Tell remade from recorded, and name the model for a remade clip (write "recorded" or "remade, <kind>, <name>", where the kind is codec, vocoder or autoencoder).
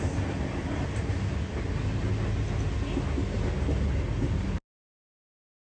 recorded